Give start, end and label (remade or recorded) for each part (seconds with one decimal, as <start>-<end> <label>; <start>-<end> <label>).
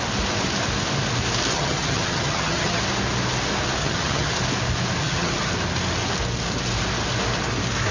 0.0-1.5 recorded; 1.5-2.8 remade; 2.8-3.8 recorded; 3.8-4.3 remade; 4.3-5.0 recorded; 5.0-5.5 remade; 5.5-7.9 recorded